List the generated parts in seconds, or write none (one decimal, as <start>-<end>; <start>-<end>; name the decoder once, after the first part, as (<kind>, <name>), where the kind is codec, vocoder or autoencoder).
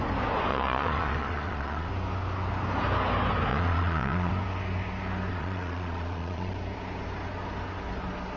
0.5-1.9 (vocoder, Vocos); 3.5-4.3; 5.3-6.5